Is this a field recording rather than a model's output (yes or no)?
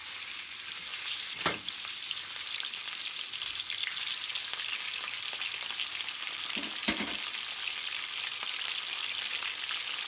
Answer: yes